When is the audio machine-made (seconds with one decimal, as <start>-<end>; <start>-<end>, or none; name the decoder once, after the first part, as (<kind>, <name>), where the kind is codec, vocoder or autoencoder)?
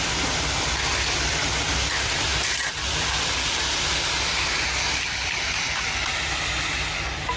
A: 0.0-7.4 (vocoder, BigVGAN v2)